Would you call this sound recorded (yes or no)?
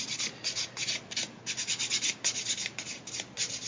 yes